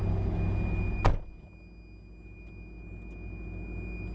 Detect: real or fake real